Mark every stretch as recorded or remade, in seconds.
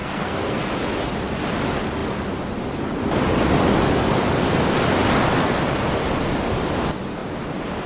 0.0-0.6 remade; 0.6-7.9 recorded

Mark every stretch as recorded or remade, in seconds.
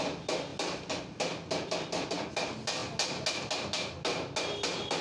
0.0-5.0 recorded